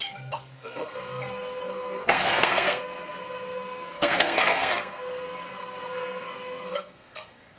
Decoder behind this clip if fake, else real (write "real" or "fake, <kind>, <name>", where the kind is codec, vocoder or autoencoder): fake, codec, SNAC